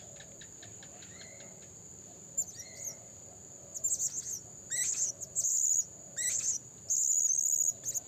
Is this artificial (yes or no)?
no